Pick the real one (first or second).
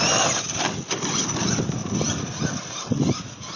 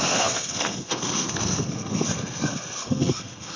first